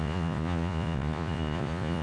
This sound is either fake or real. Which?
fake